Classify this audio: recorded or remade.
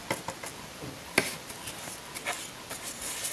recorded